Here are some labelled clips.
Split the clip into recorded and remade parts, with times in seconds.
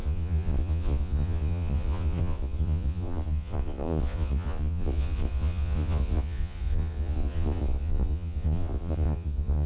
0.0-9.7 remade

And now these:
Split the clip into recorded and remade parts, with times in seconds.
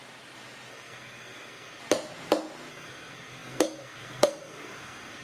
0.0-0.7 recorded; 0.7-1.8 remade; 1.8-2.7 recorded; 2.7-5.2 remade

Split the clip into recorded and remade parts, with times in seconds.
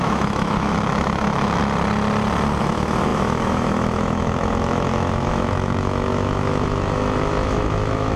0.0-1.6 remade; 1.6-2.6 recorded; 2.6-8.2 remade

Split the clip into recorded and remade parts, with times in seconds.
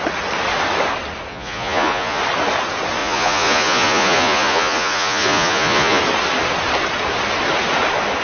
0.0-1.3 recorded; 1.3-2.2 remade; 2.2-3.0 recorded; 3.0-6.0 remade; 6.0-8.2 recorded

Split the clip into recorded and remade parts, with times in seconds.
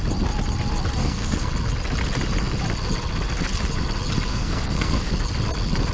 0.0-1.0 recorded; 1.0-1.5 remade; 1.5-4.3 recorded; 4.3-5.1 remade; 5.1-5.9 recorded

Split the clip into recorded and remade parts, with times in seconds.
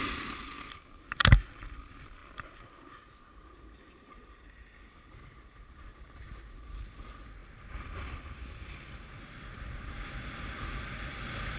0.0-11.6 recorded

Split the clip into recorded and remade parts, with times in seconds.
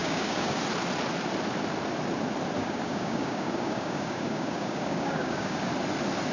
0.0-0.6 remade; 0.6-2.6 recorded; 2.6-5.7 remade; 5.7-6.3 recorded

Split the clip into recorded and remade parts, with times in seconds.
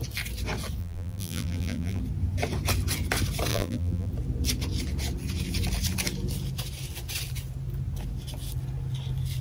0.0-0.8 recorded; 0.8-2.0 remade; 2.0-3.5 recorded; 3.5-4.1 remade; 4.1-9.4 recorded